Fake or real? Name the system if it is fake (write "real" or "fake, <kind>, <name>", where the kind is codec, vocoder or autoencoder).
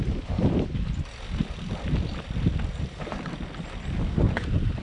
fake, vocoder, BigVGAN v2